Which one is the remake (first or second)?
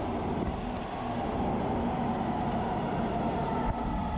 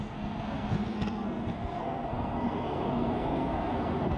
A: second